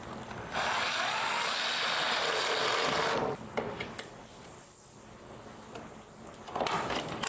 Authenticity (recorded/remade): recorded